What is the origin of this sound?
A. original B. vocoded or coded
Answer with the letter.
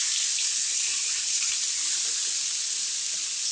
A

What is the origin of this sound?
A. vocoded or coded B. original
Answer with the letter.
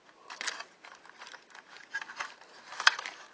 B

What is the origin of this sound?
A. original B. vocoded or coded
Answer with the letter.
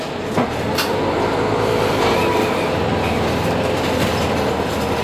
A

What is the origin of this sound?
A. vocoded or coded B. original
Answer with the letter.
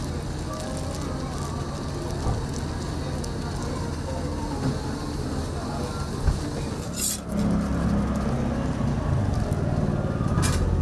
B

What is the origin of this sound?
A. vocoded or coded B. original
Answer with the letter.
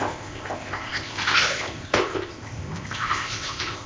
A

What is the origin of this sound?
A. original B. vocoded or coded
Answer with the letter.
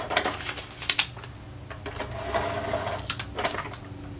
A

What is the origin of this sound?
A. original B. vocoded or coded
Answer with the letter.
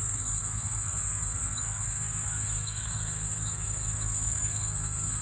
B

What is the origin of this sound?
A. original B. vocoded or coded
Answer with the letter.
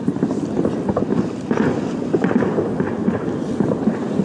A